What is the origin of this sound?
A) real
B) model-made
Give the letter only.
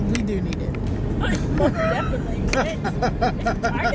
A